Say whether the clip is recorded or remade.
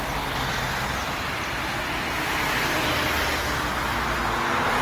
recorded